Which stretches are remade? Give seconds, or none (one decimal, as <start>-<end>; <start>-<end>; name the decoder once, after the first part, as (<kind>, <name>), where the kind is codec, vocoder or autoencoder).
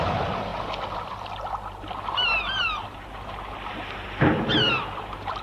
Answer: none